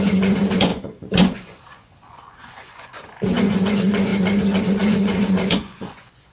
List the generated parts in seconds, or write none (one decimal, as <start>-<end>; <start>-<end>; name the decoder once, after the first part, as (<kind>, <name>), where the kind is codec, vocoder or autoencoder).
0.0-4.1 (vocoder, Vocos); 4.6-6.3